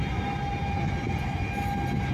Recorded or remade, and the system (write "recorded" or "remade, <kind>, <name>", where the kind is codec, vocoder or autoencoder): recorded